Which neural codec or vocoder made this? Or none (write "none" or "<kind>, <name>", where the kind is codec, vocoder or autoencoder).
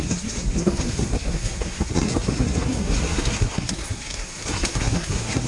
codec, SNAC